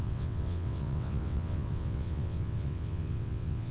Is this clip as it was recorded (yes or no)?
no